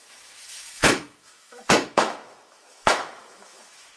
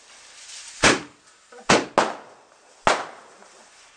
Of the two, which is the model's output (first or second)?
first